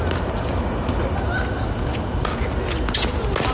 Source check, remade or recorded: recorded